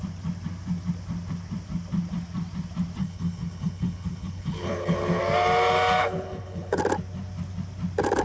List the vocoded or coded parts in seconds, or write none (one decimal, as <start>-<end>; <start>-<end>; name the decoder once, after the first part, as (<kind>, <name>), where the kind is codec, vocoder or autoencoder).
3.0-5.2 (codec, HILCodec); 6.0-6.8